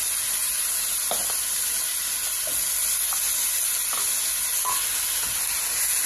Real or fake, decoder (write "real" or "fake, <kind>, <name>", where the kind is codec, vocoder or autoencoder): real